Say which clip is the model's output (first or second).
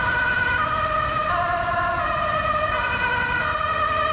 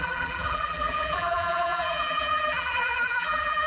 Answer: second